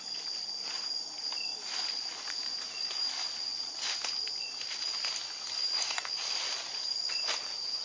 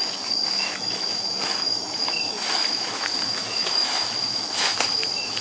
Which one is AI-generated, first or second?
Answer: second